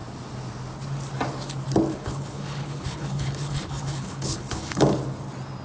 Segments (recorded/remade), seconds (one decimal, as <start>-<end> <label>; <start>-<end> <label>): 0.0-1.9 recorded; 1.9-4.8 remade; 4.8-5.6 recorded